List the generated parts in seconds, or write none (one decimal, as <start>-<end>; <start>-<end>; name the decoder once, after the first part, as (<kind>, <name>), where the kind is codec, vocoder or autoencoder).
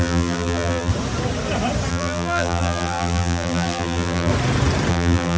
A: 0.0-0.9 (vocoder, BigVGAN v2); 1.9-4.3; 4.9-5.4